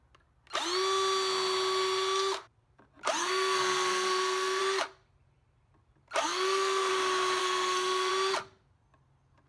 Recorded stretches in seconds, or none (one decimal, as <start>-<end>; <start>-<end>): 0.0-3.2; 4.6-6.2; 6.9-7.4; 8.1-9.5

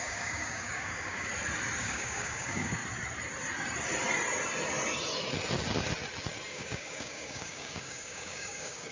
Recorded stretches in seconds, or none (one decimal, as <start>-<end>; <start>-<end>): 1.3-1.8; 2.8-6.5